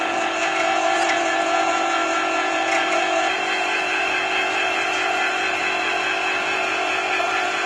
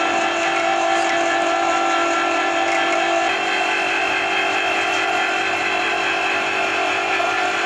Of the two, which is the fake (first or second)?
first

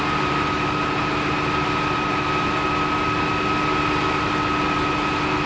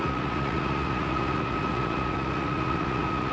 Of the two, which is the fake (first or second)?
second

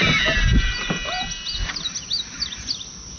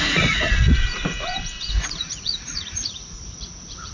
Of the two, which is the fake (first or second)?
second